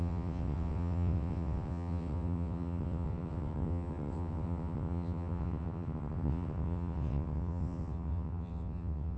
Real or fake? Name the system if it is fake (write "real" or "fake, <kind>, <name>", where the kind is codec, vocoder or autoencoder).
fake, vocoder, WaveNeXt